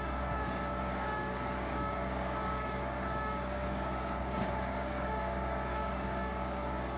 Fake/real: fake